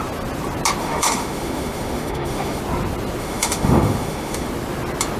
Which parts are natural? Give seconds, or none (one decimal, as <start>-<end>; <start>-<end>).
0.0-0.8; 2.6-3.2; 4.5-5.2